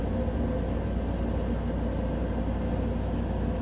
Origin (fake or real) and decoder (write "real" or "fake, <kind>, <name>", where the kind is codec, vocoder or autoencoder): real